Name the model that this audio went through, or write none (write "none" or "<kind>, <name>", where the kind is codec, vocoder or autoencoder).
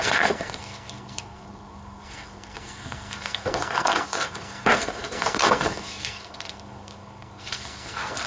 codec, SNAC